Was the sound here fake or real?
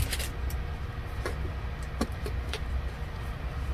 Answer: real